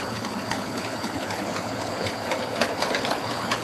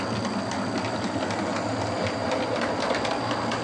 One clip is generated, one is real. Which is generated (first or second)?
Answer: first